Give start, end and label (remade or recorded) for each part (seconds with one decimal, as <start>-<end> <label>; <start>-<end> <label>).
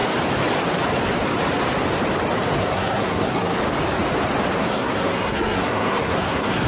0.0-2.6 recorded; 2.6-3.6 remade; 3.6-4.6 recorded; 4.6-6.7 remade